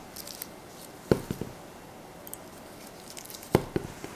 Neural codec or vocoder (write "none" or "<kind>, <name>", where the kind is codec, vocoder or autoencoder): none